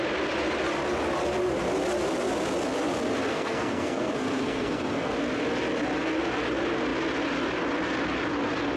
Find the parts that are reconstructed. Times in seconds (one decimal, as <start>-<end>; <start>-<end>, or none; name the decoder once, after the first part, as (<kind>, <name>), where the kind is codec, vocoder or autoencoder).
3.3-5.1 (codec, SNAC)